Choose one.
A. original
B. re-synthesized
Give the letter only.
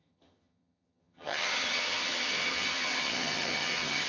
B